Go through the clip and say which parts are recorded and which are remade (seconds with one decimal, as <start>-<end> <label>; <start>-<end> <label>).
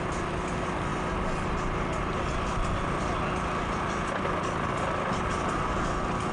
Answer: 0.0-6.3 recorded